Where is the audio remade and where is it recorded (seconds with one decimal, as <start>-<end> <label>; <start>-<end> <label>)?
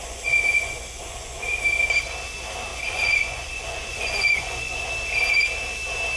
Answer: 0.0-1.4 remade; 1.4-2.7 recorded; 2.7-4.9 remade; 4.9-6.2 recorded